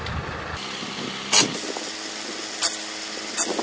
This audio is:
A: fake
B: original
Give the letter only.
B